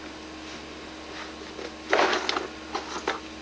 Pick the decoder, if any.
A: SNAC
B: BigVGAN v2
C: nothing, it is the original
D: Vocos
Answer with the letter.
C